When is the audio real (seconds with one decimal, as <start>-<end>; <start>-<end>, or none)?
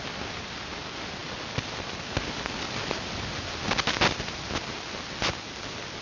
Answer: 0.0-6.0